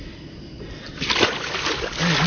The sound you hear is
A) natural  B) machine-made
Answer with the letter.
A